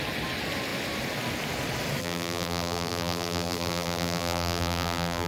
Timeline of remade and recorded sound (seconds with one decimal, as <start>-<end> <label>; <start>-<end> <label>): 0.0-2.0 recorded; 2.0-5.3 remade